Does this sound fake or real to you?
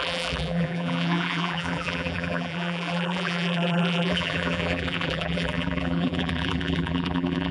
fake